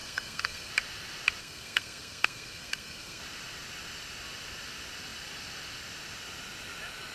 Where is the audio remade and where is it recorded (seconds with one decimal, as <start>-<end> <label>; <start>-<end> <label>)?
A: 0.0-0.7 remade; 0.7-1.4 recorded; 1.4-3.2 remade; 3.2-7.1 recorded